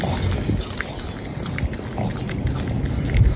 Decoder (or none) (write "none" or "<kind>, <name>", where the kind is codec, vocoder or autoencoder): none